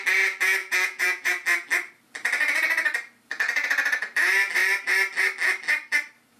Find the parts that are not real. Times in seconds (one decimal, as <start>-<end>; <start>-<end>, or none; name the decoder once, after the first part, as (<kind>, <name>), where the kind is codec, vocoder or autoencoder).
0.6-1.3 (vocoder, Vocos)